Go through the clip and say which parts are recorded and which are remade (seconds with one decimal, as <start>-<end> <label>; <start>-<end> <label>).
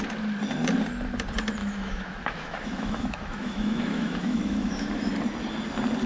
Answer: 0.0-1.6 recorded; 1.6-5.1 remade; 5.1-6.1 recorded